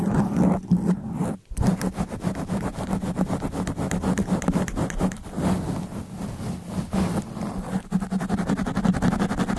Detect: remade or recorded recorded